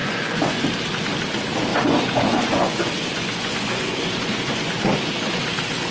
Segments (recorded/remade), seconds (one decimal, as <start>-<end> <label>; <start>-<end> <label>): 0.0-0.6 remade; 0.6-1.7 recorded; 1.7-4.7 remade; 4.7-5.9 recorded